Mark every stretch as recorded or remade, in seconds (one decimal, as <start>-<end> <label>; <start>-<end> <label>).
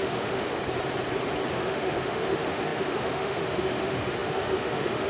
0.0-0.6 remade; 0.6-1.5 recorded; 1.5-5.1 remade